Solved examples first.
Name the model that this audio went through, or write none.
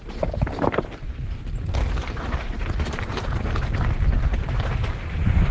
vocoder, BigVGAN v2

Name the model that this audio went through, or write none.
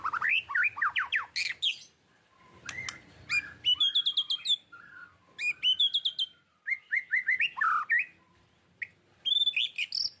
none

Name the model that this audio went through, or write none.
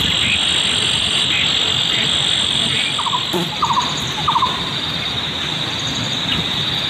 none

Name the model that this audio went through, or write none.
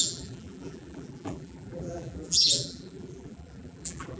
vocoder, BigVGAN v2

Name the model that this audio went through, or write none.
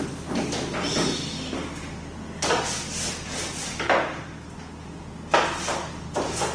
none